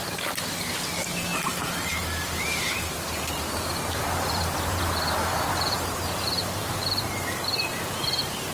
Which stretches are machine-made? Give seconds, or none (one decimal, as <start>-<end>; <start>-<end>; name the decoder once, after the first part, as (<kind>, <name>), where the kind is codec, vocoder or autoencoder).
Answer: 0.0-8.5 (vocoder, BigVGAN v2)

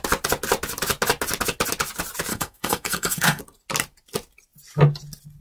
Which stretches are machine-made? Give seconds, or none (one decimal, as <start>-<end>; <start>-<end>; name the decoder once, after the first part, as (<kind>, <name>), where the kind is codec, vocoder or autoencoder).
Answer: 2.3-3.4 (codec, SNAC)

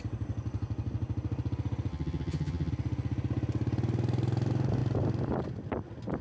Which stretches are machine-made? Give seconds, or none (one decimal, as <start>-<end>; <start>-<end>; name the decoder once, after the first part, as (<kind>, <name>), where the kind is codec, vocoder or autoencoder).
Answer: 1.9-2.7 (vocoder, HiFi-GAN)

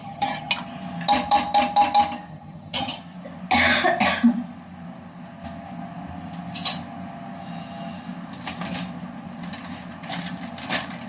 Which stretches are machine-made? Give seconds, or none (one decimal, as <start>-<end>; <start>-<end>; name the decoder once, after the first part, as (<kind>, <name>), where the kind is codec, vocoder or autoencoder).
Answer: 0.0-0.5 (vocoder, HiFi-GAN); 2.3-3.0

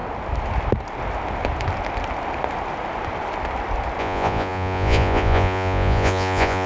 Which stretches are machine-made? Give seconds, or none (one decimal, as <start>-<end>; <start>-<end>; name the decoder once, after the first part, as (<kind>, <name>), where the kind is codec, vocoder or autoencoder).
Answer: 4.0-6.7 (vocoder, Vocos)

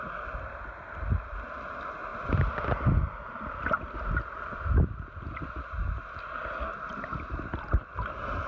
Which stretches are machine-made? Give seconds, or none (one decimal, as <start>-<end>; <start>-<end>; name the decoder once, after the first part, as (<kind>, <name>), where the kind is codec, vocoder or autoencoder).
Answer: none

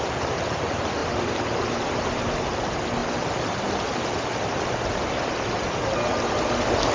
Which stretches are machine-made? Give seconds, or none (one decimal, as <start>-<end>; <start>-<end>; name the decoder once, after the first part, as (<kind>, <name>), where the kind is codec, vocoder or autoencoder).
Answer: 1.0-2.6 (vocoder, BigVGAN v2)

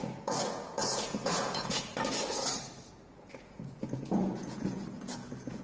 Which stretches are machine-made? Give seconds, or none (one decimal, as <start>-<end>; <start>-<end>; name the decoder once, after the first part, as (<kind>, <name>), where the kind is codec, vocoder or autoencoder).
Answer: 0.0-1.9 (vocoder, Vocos); 3.1-5.6